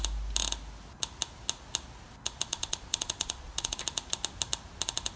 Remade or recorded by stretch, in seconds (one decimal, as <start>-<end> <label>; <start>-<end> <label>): 0.0-2.5 recorded; 2.5-3.8 remade; 3.8-5.2 recorded